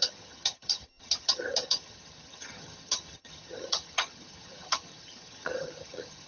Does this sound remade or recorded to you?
remade